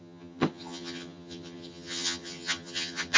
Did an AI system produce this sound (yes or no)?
yes